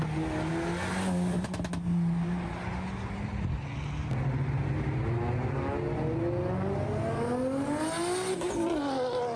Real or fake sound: real